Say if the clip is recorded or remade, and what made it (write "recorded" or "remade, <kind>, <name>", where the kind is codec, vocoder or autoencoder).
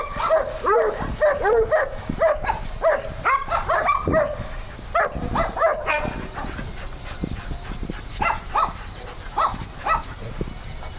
recorded